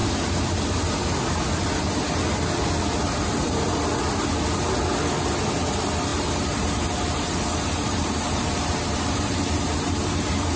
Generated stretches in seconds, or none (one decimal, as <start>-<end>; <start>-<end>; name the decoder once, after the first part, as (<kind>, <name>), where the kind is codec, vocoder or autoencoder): 0.0-0.6 (vocoder, BigVGAN v2); 3.0-3.8; 6.1-10.6